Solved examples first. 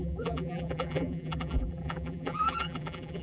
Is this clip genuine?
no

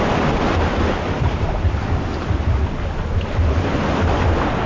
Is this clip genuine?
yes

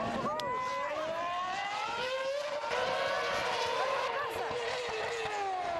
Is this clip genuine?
yes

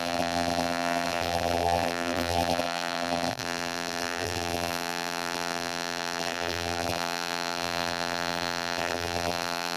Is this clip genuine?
no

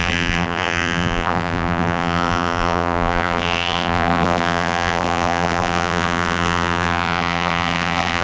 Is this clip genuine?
no